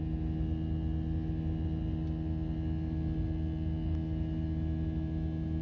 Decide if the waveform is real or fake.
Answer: real